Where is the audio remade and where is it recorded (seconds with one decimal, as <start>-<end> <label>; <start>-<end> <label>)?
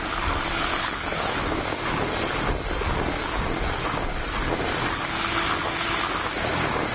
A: 0.0-0.7 recorded; 0.7-1.5 remade; 1.5-6.9 recorded